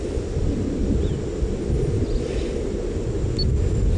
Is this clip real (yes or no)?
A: yes